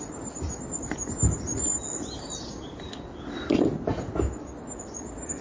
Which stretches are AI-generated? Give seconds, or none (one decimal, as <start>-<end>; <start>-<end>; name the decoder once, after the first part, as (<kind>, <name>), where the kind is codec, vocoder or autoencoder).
none